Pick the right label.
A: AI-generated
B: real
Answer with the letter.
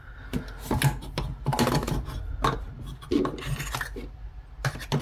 B